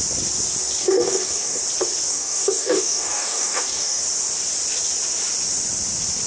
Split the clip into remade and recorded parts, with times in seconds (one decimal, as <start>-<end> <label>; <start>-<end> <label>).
0.0-0.8 recorded; 0.8-1.6 remade; 1.6-2.1 recorded; 2.1-4.0 remade; 4.0-6.3 recorded